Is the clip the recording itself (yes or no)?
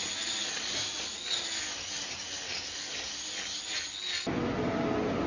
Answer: yes